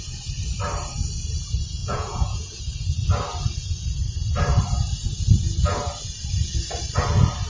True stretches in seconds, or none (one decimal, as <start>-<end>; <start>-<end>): 0.0-1.8; 2.6-7.5